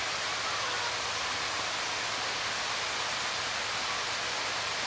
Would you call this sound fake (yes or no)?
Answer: no